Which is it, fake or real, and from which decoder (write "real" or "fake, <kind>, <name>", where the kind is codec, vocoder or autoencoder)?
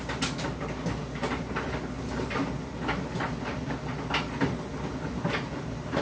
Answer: real